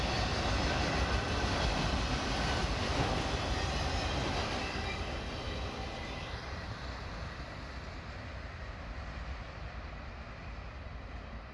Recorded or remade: recorded